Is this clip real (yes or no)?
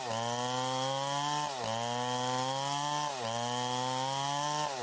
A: yes